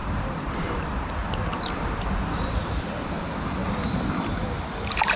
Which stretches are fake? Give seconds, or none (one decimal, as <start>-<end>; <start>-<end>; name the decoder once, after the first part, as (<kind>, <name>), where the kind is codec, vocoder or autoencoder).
0.0-3.1 (vocoder, BigVGAN v2); 3.6-4.1